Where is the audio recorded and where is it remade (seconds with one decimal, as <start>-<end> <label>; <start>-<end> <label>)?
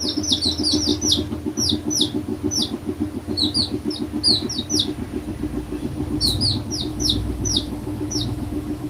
0.0-6.9 recorded; 6.9-8.9 remade